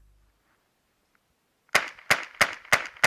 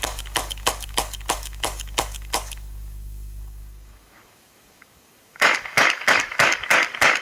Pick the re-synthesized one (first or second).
second